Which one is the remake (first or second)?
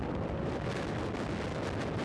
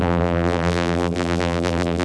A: second